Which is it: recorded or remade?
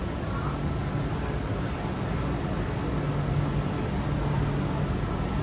recorded